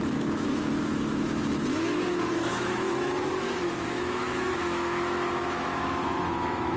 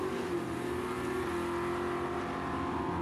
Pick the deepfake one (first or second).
first